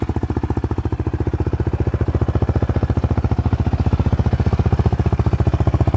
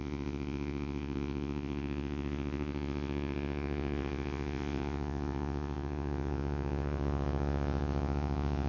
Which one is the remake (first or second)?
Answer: second